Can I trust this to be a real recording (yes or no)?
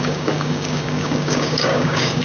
no